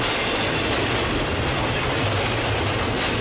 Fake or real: real